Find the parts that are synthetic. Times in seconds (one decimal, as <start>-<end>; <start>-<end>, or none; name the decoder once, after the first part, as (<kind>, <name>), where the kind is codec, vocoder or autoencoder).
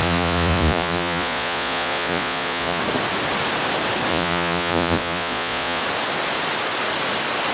0.0-2.8 (vocoder, Vocos); 4.1-5.8